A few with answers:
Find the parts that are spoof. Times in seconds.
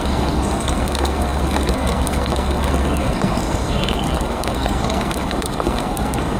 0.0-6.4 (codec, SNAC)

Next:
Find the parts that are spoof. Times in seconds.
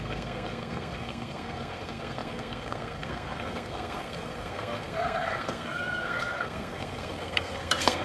0.0-8.0 (codec, SNAC)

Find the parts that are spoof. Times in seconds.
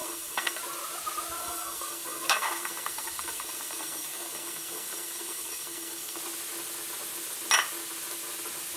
0.0-0.6 (codec, SNAC); 1.4-6.2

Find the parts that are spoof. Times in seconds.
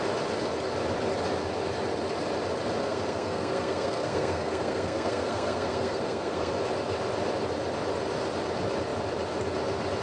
2.8-6.5 (codec, SNAC)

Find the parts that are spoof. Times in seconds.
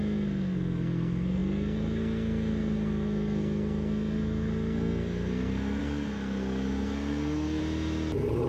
0.0-7.6 (codec, SNAC)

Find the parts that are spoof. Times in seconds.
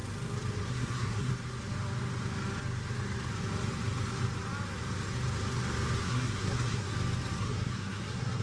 0.7-1.3 (codec, SNAC); 6.0-6.9; 7.4-8.4